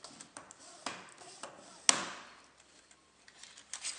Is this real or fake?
real